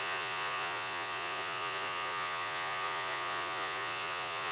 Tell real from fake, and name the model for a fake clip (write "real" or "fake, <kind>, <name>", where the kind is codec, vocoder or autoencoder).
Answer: fake, vocoder, Vocos